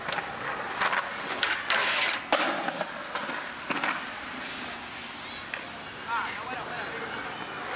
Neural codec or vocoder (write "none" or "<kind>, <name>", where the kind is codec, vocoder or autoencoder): none